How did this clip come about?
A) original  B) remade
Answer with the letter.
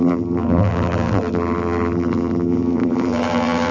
B